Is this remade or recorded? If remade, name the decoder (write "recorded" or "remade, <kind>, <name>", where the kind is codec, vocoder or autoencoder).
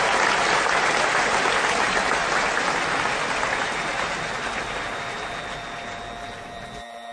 recorded